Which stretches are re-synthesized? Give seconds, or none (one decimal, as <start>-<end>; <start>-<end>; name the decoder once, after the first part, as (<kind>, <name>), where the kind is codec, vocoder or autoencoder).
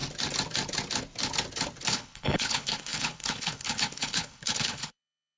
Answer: 1.9-5.4 (codec, HILCodec)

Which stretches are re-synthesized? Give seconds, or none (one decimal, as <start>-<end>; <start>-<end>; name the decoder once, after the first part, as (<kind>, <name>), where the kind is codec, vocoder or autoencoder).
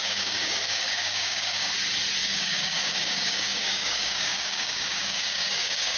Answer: 0.0-1.7 (codec, DAC); 2.2-6.0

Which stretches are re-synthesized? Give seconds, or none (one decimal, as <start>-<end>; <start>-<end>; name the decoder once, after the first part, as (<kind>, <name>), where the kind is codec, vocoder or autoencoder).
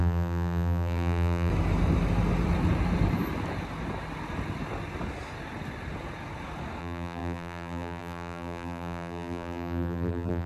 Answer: 0.0-1.5 (vocoder, BigVGAN v2); 6.8-10.5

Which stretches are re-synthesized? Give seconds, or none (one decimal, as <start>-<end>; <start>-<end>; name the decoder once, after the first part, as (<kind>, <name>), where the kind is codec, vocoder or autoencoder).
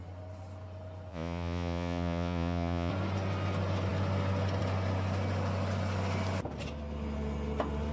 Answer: 1.1-2.9 (vocoder, Vocos)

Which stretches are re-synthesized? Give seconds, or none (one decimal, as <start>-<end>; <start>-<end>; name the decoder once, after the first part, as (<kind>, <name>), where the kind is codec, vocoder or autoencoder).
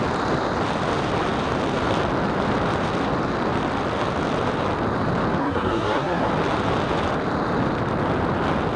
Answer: 5.4-6.3 (codec, SNAC)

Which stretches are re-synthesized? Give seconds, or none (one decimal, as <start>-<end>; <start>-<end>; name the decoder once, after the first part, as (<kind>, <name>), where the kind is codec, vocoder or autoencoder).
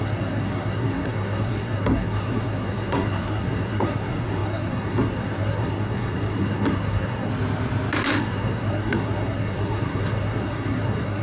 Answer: 0.0-7.3 (codec, SNAC); 8.2-11.2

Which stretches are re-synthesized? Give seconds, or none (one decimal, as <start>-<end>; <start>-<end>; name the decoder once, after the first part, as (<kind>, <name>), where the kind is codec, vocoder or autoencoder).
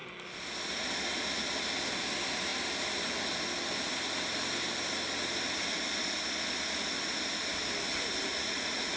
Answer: 8.3-9.0 (vocoder, Vocos)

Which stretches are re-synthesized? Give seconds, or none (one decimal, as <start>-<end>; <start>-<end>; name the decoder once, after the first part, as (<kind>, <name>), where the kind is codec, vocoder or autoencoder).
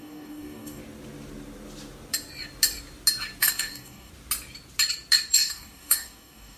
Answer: 0.0-0.8 (codec, DAC); 3.4-4.1; 5.3-6.6